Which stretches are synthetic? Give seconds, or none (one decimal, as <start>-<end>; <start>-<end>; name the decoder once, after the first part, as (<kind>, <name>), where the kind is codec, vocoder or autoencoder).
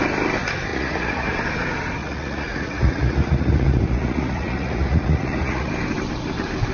0.7-1.4 (vocoder, Vocos); 2.0-5.7